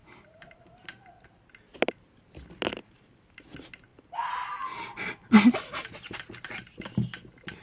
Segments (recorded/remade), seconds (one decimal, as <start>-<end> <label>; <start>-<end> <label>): 0.0-7.6 recorded